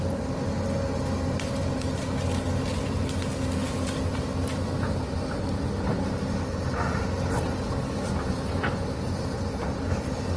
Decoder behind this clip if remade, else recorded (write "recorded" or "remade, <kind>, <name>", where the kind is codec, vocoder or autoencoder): recorded